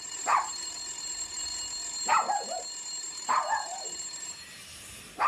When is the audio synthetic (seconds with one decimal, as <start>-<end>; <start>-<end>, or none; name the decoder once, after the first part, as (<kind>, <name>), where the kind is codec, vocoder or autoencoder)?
0.0-1.5 (vocoder, BigVGAN v2); 3.0-5.3